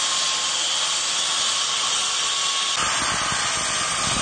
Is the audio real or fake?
real